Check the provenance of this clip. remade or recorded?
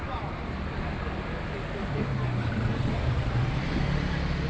recorded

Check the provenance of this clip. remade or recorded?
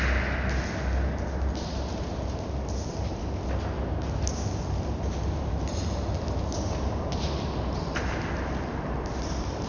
recorded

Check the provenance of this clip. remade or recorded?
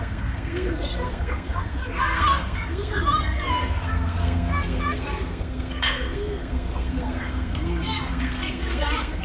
remade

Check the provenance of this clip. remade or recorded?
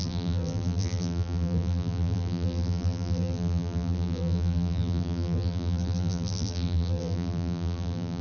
remade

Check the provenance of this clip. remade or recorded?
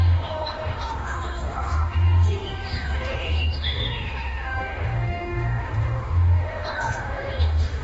remade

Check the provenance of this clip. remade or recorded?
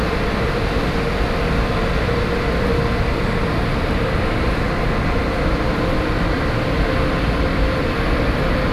recorded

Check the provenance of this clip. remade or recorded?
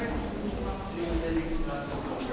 recorded